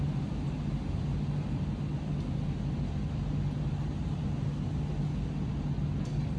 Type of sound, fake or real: real